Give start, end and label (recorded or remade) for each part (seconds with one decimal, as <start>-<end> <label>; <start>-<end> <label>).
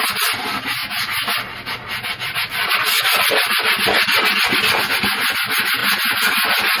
0.0-6.8 recorded